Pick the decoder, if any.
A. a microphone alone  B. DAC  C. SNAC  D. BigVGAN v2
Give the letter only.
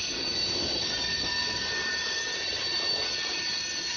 D